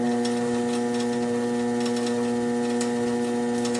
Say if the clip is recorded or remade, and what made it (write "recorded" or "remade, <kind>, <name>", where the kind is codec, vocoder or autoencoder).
recorded